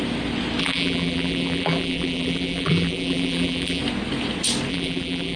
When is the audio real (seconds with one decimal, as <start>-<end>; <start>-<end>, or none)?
0.0-0.6; 3.8-4.7